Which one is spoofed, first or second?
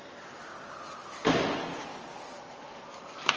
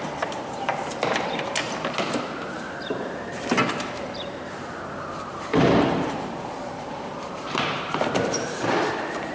second